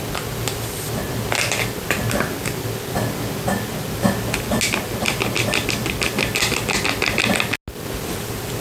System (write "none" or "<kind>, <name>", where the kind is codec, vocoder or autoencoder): none